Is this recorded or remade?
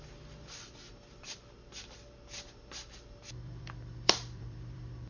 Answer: remade